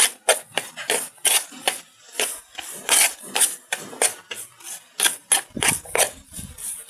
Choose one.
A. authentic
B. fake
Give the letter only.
A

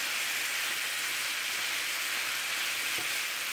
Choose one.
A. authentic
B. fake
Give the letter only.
A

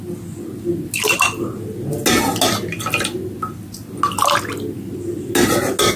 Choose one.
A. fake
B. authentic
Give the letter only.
B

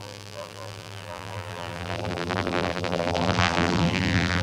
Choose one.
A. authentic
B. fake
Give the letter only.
B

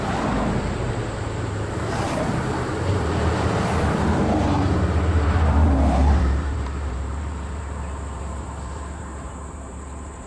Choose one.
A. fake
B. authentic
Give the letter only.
A